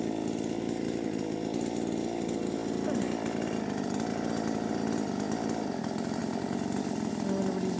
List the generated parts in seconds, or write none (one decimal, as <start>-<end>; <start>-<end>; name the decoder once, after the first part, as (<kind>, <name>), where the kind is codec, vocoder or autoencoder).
2.6-3.5 (vocoder, BigVGAN v2); 6.2-7.1

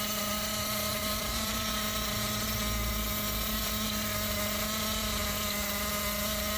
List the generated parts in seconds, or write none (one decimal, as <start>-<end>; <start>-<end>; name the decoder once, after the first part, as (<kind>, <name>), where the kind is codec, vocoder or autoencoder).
0.9-1.7 (vocoder, BigVGAN v2)

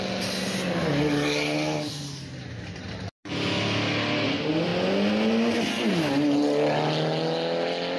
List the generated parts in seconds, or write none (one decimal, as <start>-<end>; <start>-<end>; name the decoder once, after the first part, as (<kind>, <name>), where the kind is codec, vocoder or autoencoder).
none

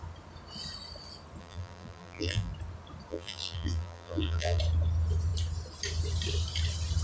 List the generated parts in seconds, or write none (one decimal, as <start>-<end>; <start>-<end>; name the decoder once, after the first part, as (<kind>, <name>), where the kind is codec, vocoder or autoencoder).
1.4-2.5 (vocoder, BigVGAN v2); 3.1-4.6

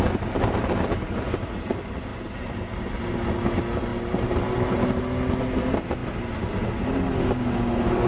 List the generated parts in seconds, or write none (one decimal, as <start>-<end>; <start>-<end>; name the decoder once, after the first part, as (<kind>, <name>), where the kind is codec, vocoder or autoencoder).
2.1-2.9 (vocoder, BigVGAN v2); 3.9-5.0